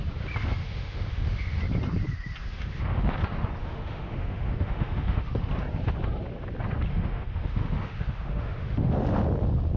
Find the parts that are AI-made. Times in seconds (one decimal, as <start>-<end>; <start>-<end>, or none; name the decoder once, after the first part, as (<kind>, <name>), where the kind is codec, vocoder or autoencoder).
0.6-1.6 (autoencoder, DAC-VAE); 2.4-3.1; 3.6-5.5; 6.9-8.9